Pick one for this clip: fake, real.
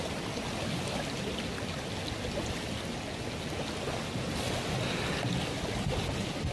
real